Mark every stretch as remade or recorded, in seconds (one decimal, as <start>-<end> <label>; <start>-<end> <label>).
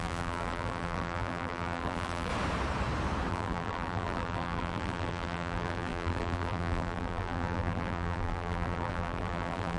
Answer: 0.0-2.3 remade; 2.3-3.3 recorded; 3.3-9.8 remade